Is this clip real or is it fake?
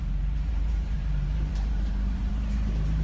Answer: fake